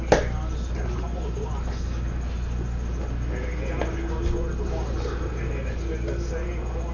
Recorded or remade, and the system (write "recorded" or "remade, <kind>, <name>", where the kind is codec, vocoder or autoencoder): recorded